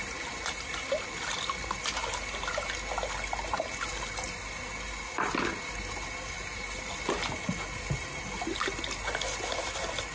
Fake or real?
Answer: real